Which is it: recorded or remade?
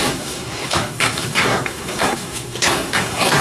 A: remade